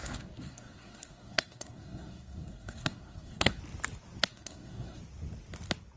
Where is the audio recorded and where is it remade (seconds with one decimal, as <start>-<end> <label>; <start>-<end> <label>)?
0.0-3.6 remade; 3.6-4.3 recorded; 4.3-5.0 remade; 5.0-6.0 recorded